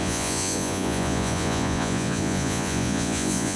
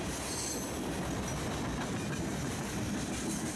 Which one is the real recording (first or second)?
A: second